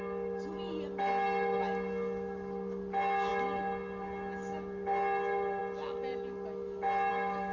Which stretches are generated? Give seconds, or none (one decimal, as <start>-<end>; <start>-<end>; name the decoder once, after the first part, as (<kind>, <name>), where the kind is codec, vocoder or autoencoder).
none